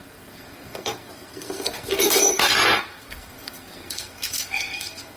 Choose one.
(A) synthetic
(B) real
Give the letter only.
A